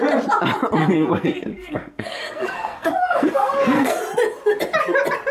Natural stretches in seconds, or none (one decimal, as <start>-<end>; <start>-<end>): 0.0-0.8; 4.0-5.3